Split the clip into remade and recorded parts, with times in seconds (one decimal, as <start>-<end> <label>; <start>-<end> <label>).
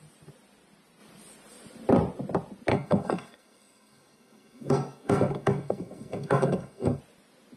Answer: 0.0-2.7 recorded; 2.7-7.0 remade; 7.0-7.6 recorded